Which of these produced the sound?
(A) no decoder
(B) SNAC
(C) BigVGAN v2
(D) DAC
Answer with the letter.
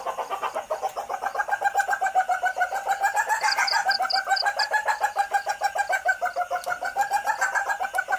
A